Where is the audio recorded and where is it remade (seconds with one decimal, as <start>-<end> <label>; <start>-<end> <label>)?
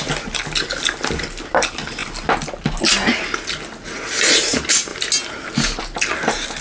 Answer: 0.0-6.6 recorded